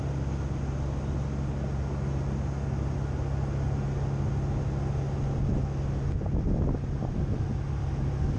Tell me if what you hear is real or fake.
real